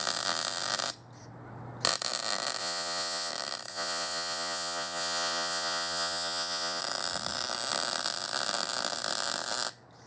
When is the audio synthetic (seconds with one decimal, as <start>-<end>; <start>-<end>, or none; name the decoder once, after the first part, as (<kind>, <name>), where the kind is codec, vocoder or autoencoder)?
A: 2.6-3.3 (vocoder, Vocos); 3.7-6.8